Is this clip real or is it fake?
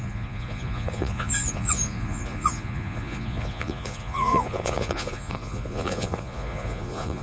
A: fake